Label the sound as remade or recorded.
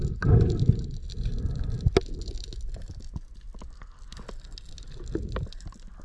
recorded